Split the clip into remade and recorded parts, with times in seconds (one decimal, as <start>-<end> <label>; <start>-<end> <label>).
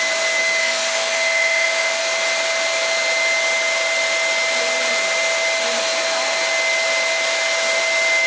0.0-0.6 recorded; 0.6-2.0 remade; 2.0-8.3 recorded